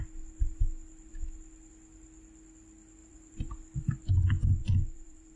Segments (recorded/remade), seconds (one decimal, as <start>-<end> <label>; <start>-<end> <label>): 0.0-3.0 recorded; 3.0-3.9 remade; 3.9-4.6 recorded; 4.6-5.4 remade